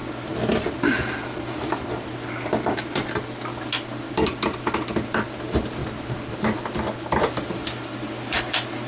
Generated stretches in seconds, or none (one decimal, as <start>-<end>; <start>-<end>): 4.1-5.8; 7.4-8.9